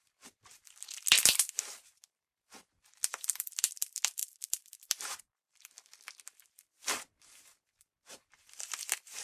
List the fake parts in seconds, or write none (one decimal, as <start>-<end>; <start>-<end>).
0.0-9.2